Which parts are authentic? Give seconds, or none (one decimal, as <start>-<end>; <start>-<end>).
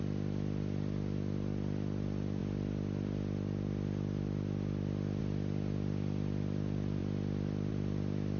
0.0-8.4